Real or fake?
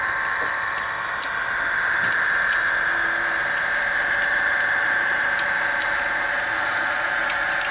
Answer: real